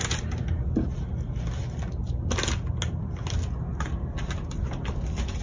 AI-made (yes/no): no